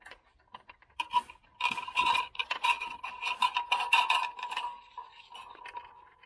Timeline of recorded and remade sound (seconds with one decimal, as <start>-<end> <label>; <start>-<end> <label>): 0.0-2.4 recorded; 2.4-3.1 remade; 3.1-6.3 recorded